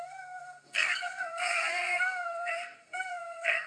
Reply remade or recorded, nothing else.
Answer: remade